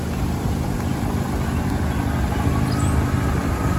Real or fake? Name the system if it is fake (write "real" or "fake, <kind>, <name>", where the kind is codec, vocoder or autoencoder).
real